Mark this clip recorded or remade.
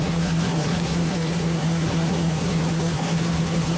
remade